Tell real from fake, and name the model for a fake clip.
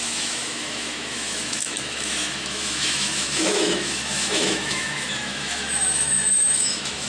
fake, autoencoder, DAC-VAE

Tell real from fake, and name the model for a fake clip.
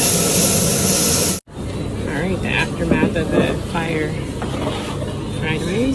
real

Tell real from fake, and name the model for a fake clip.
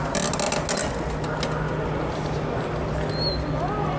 real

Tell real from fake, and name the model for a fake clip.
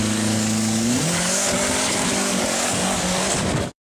fake, codec, DAC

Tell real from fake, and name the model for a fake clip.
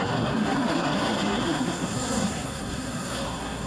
fake, codec, SNAC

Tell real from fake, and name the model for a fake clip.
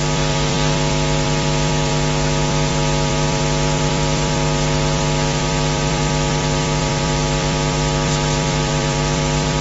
fake, vocoder, BigVGAN v2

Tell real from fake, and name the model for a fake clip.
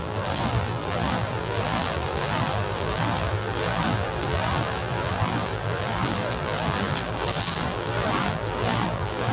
fake, vocoder, BigVGAN v2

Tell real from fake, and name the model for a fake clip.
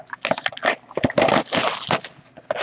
real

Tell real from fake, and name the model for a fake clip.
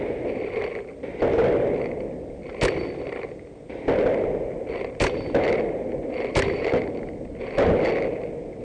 real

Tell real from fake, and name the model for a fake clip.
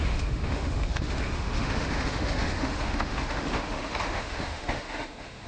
fake, autoencoder, DAC-VAE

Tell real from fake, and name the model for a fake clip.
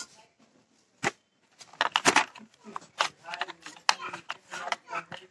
real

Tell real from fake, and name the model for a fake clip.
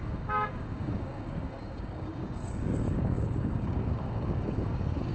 fake, codec, DAC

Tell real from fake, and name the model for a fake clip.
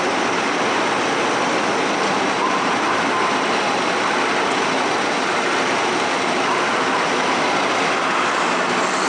real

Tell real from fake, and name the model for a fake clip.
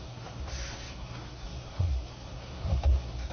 fake, codec, SNAC